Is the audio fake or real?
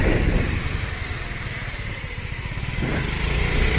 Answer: real